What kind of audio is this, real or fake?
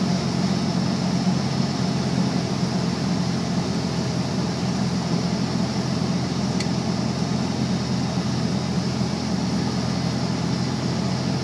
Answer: real